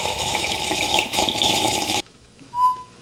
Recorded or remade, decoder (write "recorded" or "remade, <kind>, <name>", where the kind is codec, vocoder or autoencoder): remade, autoencoder, DAC-VAE